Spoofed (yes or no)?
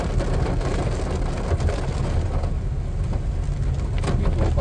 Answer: no